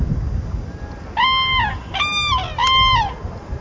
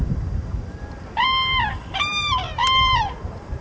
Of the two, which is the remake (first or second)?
second